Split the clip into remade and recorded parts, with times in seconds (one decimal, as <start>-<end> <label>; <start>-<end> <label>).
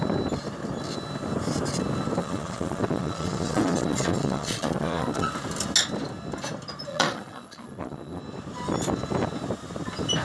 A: 0.0-2.2 recorded; 2.2-5.3 remade; 5.3-6.9 recorded; 6.9-8.2 remade; 8.2-10.2 recorded